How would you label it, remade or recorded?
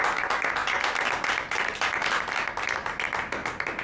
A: recorded